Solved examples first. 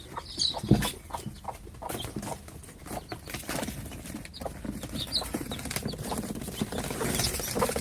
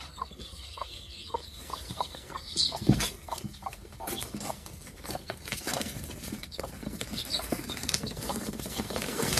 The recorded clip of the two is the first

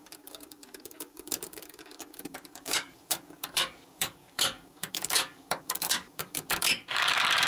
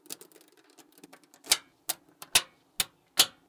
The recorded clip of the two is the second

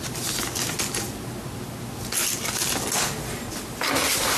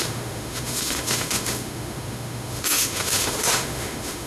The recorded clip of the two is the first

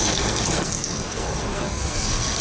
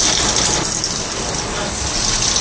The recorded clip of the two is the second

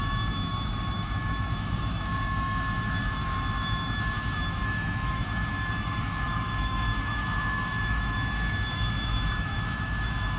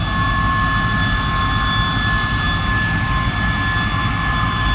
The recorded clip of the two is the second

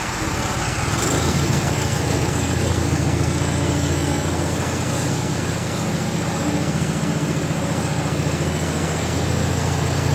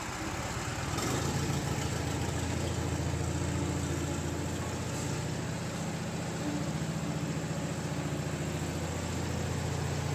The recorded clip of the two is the second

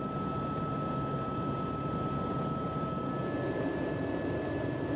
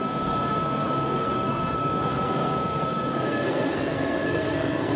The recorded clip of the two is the first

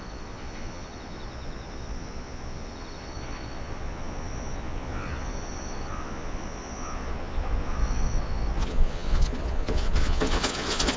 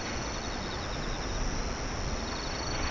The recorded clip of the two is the second